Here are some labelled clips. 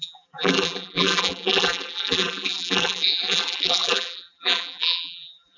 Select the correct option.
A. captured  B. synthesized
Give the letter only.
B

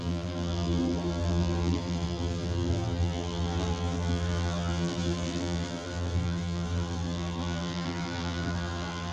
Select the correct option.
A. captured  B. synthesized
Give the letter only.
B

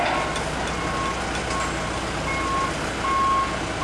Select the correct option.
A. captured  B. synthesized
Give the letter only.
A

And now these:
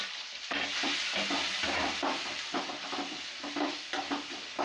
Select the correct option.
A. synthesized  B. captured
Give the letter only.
A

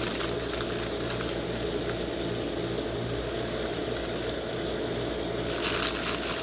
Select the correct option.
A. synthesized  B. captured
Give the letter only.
B